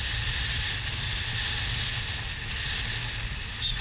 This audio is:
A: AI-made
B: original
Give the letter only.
B